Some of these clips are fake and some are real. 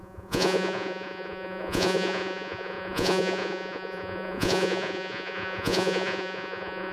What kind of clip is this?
fake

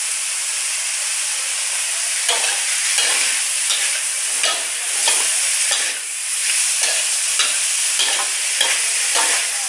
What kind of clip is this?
real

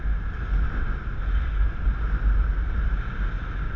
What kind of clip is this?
real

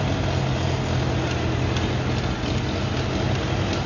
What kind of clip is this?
real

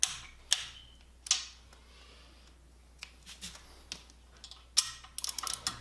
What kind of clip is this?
real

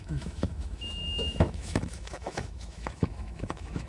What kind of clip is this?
fake